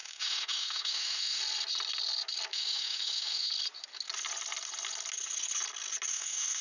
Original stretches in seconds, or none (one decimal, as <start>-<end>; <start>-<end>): 1.4-2.5; 3.5-6.1